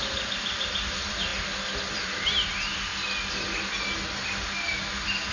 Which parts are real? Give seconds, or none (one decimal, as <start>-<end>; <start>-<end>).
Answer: 1.3-1.9; 2.9-5.3